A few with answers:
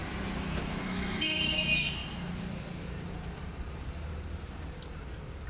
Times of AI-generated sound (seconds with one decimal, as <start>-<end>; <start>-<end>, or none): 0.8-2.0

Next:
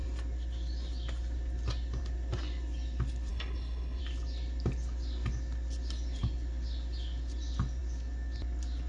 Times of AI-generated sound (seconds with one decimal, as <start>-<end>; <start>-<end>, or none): 3.3-4.0

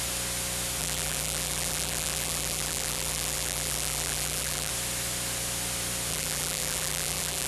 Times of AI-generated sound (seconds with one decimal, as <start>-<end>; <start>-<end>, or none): 0.8-4.7; 6.1-7.5

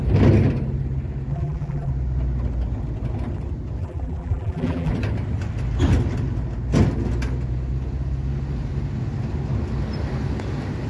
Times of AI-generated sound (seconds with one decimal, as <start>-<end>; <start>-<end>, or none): 1.3-1.9; 3.8-4.9